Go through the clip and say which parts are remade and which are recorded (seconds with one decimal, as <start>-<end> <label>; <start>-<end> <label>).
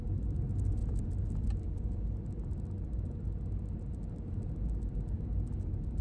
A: 0.0-6.0 recorded